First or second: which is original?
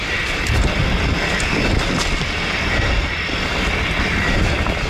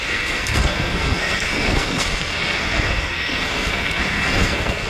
first